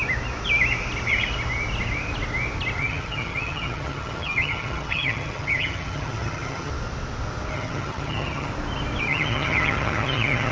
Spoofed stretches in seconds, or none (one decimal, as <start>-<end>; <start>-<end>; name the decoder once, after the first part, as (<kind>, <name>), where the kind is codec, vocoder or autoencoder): 2.8-6.7 (vocoder, HiFi-GAN); 7.5-8.5; 9.0-10.5